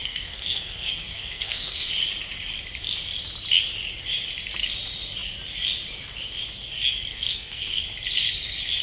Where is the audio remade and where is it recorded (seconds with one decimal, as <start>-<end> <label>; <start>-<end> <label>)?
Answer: 0.0-1.9 remade; 1.9-7.1 recorded; 7.1-7.8 remade; 7.8-8.8 recorded